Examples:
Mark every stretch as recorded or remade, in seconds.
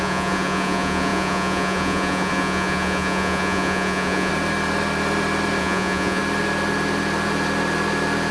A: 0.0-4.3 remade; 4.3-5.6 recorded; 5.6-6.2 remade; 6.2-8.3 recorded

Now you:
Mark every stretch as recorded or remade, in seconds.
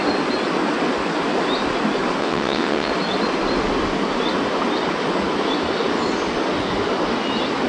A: 0.0-2.2 recorded; 2.2-2.9 remade; 2.9-7.7 recorded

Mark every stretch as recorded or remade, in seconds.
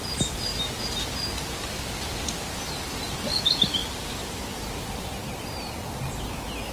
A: 0.0-6.7 recorded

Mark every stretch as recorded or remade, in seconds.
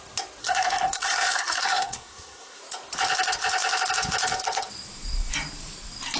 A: 0.0-0.4 recorded; 0.4-2.6 remade; 2.6-6.2 recorded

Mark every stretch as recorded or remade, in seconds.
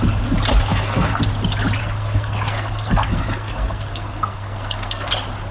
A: 0.0-0.7 recorded; 0.7-1.2 remade; 1.2-1.8 recorded; 1.8-5.1 remade; 5.1-5.5 recorded